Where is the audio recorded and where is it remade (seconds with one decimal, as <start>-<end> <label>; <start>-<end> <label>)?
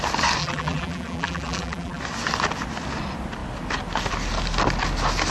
0.0-0.4 recorded; 0.4-2.0 remade; 2.0-5.3 recorded